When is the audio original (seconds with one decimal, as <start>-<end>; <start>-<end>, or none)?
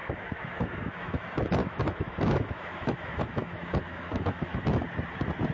1.2-1.6; 4.6-5.5